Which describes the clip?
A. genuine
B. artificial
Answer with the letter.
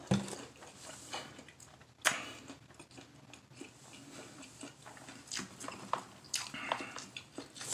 A